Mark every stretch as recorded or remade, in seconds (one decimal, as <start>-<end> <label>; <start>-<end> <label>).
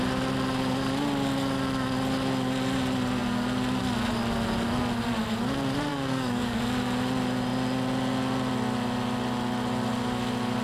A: 0.0-5.9 recorded; 5.9-6.6 remade; 6.6-10.6 recorded